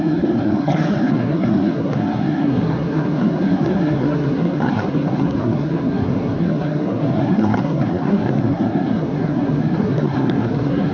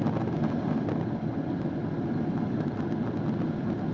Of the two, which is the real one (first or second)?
second